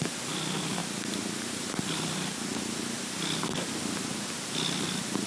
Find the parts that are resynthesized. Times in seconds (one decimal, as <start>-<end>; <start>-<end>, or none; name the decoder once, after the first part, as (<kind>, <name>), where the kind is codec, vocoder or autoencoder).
none